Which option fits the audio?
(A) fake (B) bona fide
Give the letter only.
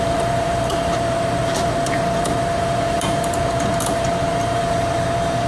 A